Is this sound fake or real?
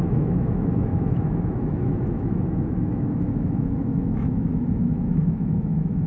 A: fake